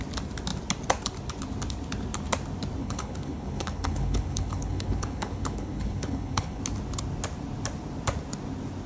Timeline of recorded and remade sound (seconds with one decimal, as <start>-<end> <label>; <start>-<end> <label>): 0.0-2.8 recorded; 2.8-6.6 remade; 6.6-8.9 recorded